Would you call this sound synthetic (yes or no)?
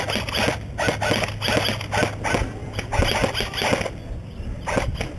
no